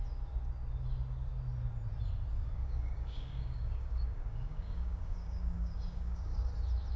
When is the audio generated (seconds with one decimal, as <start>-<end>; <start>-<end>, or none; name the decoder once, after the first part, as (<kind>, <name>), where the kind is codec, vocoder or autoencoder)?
2.3-6.5 (codec, DAC)